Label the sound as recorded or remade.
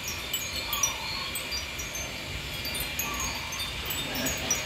recorded